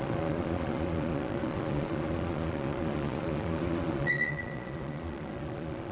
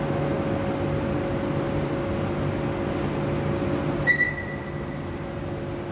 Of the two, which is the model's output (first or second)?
first